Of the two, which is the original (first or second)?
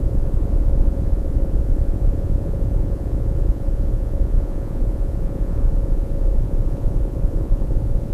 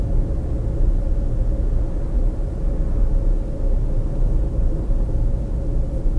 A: second